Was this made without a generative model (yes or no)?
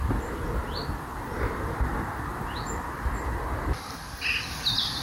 no